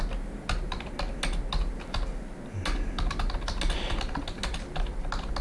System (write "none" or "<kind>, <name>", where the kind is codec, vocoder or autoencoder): none